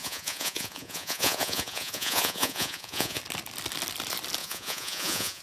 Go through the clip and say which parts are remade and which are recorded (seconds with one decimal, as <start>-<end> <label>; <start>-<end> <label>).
0.0-3.2 remade; 3.2-4.4 recorded; 4.4-5.4 remade